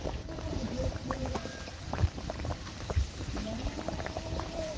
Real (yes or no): no